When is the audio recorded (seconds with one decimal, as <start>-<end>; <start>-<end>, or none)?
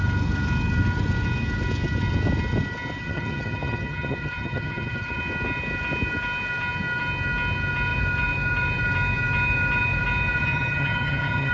0.0-3.0; 5.2-10.4